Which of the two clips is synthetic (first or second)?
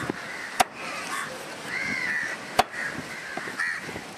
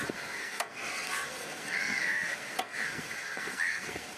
second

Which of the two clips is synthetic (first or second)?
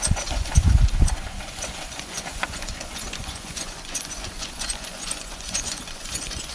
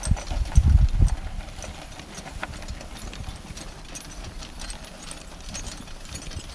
first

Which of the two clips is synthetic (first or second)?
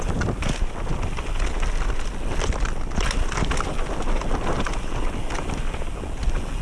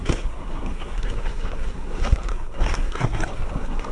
second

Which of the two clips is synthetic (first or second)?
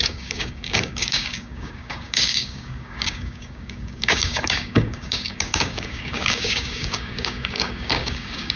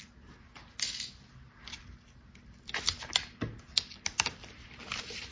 first